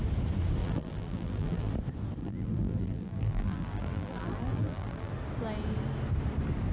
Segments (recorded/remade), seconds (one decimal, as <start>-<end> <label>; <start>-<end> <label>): 0.0-0.6 recorded; 0.6-1.7 remade; 1.7-2.2 recorded; 2.2-5.1 remade; 5.1-6.7 recorded